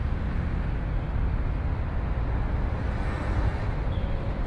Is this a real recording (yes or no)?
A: yes